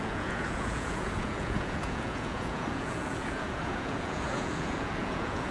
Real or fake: fake